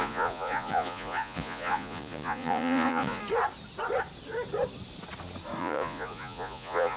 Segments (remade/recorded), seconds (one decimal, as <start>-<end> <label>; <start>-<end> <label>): 0.0-3.2 remade; 3.2-5.6 recorded; 5.6-7.0 remade